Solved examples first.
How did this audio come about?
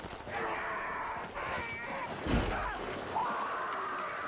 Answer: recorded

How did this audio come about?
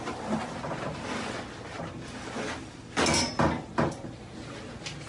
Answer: recorded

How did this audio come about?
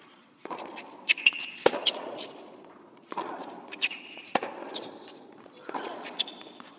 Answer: remade